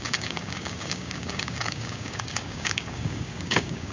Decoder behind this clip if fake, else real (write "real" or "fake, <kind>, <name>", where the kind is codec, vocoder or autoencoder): fake, codec, DAC